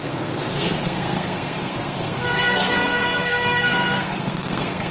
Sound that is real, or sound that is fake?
fake